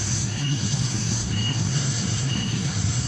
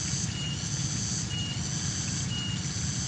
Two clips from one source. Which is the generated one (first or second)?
first